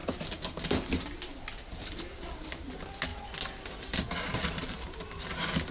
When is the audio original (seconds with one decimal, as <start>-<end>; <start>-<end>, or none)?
0.0-5.7